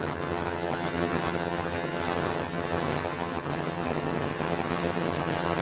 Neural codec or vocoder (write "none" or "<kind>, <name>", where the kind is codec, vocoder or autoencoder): vocoder, HiFi-GAN